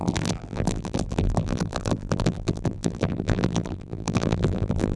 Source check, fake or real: fake